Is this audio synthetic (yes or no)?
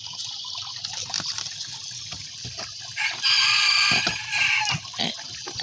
yes